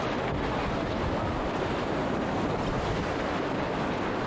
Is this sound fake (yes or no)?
no